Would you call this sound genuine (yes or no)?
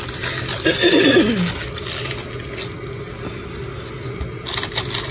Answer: yes